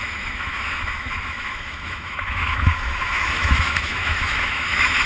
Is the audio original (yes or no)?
no